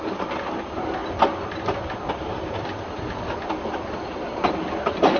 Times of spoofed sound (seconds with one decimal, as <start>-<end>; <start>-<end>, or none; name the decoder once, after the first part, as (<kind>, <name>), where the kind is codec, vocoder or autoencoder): none